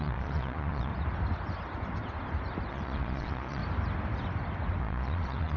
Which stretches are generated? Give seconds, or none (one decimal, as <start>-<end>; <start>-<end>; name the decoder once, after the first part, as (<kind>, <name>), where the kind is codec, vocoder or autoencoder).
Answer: 0.0-0.9 (vocoder, Vocos); 2.7-3.6; 4.8-5.6